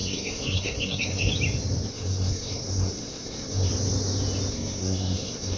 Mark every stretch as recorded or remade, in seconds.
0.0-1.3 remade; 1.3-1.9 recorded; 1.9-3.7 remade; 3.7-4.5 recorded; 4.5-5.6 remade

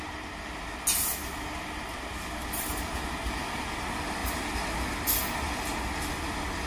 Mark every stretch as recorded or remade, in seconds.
0.0-6.7 recorded

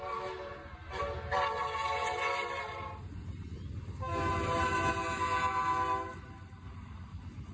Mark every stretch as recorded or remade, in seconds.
0.0-7.5 recorded

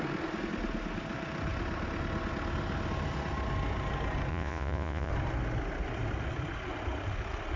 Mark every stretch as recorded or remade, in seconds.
0.0-4.3 recorded; 4.3-5.1 remade; 5.1-7.6 recorded

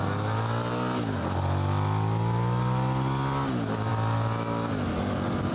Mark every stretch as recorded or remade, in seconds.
0.0-5.5 recorded